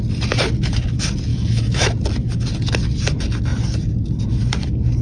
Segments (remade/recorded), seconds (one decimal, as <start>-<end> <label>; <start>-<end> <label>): 0.0-1.3 recorded; 1.3-1.9 remade; 1.9-5.0 recorded